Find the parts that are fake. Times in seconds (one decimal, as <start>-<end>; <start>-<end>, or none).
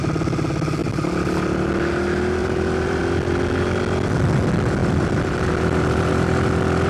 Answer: 2.4-3.0; 4.8-6.5